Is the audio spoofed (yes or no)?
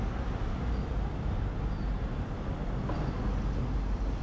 no